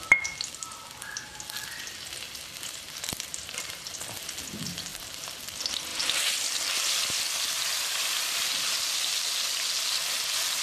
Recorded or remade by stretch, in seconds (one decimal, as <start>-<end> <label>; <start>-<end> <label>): 0.0-3.3 recorded; 3.3-3.9 remade; 3.9-4.9 recorded; 4.9-5.4 remade; 5.4-10.6 recorded